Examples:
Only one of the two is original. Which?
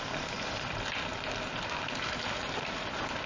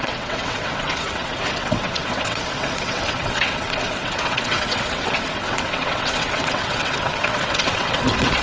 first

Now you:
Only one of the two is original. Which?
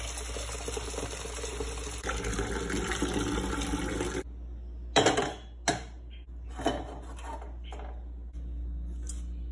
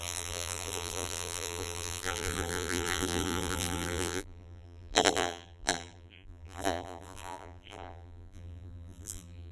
first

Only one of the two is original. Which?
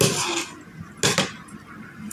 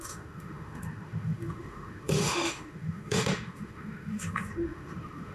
first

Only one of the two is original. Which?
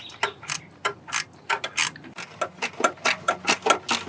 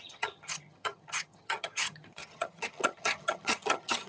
first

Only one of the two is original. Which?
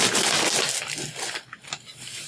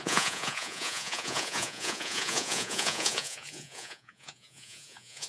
first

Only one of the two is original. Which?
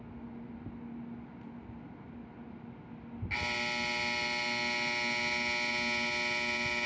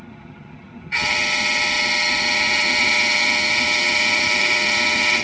first